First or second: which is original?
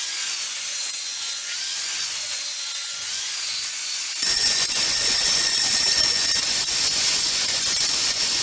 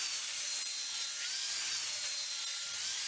second